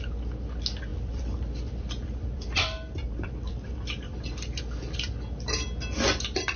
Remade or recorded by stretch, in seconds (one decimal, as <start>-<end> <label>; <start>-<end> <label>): 0.0-0.9 recorded; 0.9-4.6 remade; 4.6-6.6 recorded

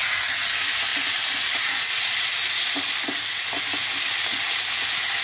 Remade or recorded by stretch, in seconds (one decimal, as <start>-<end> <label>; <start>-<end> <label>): 0.0-5.2 recorded